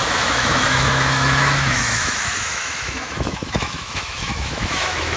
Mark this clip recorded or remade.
remade